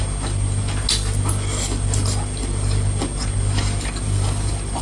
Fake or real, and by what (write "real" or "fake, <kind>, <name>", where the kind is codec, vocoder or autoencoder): real